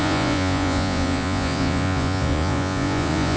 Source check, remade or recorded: remade